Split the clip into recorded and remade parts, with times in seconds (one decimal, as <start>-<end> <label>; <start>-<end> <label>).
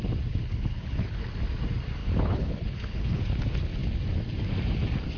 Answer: 0.0-0.4 recorded; 0.4-1.3 remade; 1.3-2.0 recorded; 2.0-3.4 remade; 3.4-5.2 recorded